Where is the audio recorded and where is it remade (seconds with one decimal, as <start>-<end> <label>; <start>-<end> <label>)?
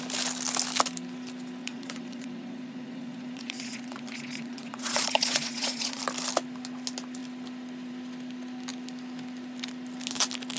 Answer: 0.0-1.6 recorded; 1.6-6.0 remade; 6.0-10.6 recorded